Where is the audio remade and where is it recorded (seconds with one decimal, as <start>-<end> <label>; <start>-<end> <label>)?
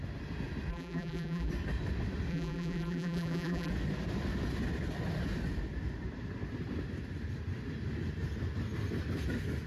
0.0-0.7 recorded; 0.7-1.5 remade; 1.5-2.3 recorded; 2.3-3.7 remade; 3.7-9.7 recorded